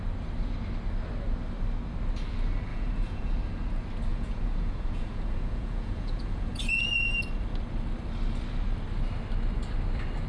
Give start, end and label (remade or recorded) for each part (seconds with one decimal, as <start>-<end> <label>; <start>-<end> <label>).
0.0-2.7 recorded; 2.7-3.3 remade; 3.3-4.1 recorded; 4.1-7.1 remade; 7.1-10.3 recorded